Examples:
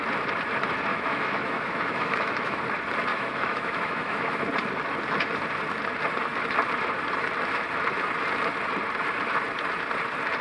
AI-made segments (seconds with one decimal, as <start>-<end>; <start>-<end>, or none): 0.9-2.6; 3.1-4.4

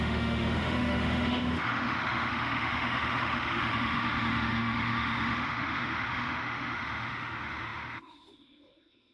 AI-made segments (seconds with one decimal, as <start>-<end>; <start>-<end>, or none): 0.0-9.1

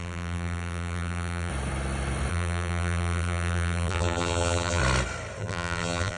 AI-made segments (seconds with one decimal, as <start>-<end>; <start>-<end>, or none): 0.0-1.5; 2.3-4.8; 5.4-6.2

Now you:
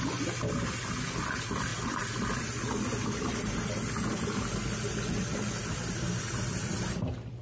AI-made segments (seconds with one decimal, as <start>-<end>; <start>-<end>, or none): none

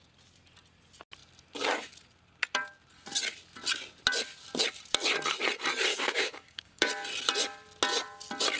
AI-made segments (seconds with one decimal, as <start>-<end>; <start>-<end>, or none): 5.9-6.9

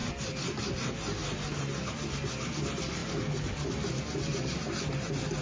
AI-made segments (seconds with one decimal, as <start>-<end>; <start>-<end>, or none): none

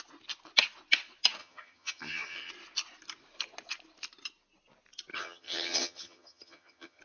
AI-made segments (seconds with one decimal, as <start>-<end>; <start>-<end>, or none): 1.4-2.5; 5.1-7.0

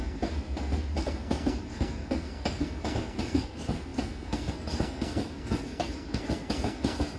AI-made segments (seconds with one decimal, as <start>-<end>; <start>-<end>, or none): 0.0-7.2